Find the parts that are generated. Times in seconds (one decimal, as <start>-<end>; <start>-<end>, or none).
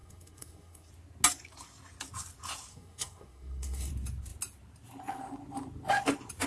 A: 0.0-0.9; 2.7-3.9